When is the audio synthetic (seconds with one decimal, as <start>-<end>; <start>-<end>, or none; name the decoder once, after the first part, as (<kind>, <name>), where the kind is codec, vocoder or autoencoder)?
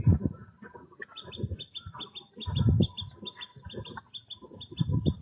none